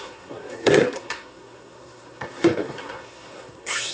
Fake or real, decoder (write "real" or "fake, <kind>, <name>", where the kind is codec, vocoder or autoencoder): fake, codec, SNAC